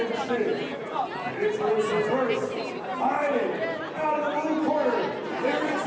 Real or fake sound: real